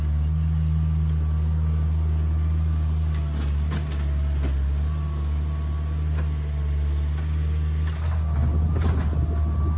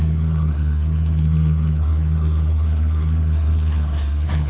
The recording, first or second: first